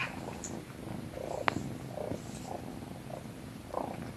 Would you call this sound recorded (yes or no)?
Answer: yes